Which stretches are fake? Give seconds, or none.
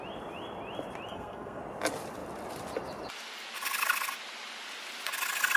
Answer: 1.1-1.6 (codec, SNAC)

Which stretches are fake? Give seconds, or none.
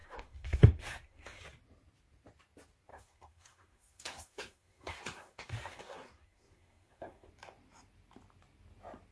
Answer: 0.0-1.4 (codec, SNAC); 2.9-7.3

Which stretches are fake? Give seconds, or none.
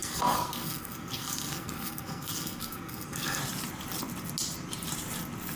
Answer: 0.0-3.4 (codec, SNAC)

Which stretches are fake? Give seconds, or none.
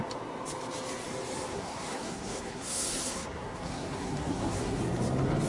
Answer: 1.5-4.8 (codec, SNAC)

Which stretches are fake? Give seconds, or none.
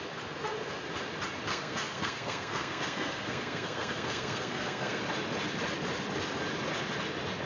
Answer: 1.5-5.0 (codec, SNAC)